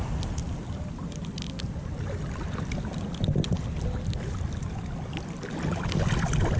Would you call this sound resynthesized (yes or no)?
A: no